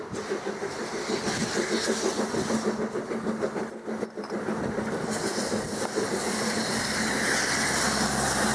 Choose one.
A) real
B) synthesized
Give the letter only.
A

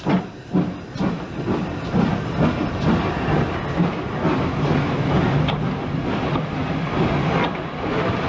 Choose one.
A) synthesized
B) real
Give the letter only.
B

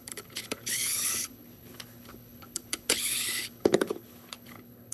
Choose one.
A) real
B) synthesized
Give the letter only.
B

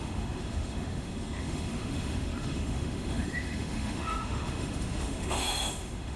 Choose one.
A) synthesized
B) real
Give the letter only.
A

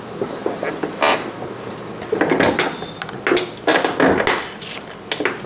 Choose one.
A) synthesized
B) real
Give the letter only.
B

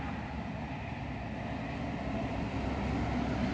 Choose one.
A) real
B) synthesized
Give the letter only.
A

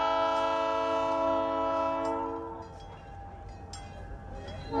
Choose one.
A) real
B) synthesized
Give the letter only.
A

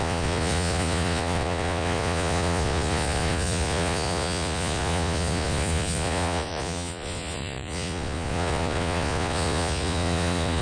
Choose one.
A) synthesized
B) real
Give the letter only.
A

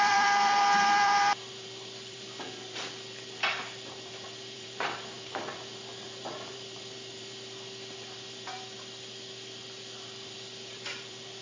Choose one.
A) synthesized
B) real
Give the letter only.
A